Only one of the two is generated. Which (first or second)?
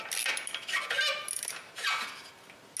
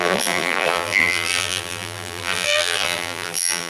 second